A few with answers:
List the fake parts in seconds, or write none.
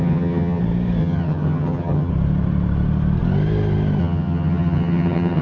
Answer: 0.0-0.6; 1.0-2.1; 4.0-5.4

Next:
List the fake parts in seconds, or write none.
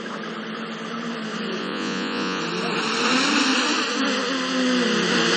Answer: 1.6-2.4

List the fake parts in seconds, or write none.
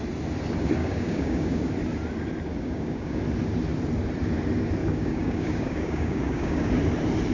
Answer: 0.8-1.7; 2.5-3.2; 4.8-6.7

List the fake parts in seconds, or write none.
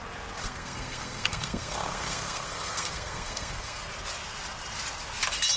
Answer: 0.4-3.8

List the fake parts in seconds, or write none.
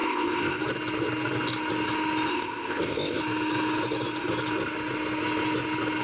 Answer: 0.0-0.6; 2.3-3.2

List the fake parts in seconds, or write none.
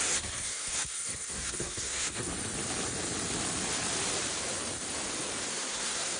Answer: 0.0-2.3; 5.5-6.2